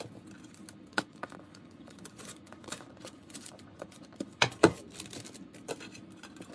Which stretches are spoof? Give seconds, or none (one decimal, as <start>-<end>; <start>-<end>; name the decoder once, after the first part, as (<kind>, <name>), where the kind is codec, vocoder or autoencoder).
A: 0.9-4.8 (vocoder, Vocos)